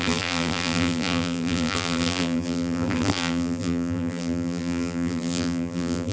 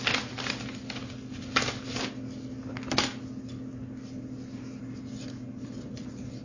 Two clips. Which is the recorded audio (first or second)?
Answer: second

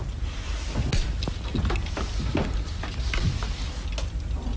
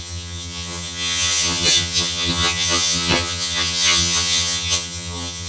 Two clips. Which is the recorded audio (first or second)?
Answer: first